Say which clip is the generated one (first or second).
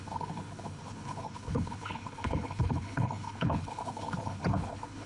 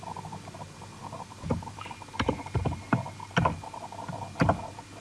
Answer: first